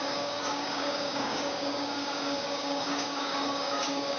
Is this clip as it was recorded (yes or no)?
no